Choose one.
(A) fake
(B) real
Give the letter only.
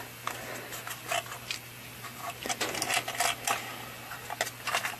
B